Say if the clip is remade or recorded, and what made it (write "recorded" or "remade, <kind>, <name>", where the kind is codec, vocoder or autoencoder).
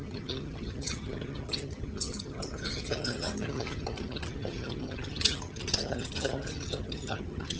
remade, vocoder, HiFi-GAN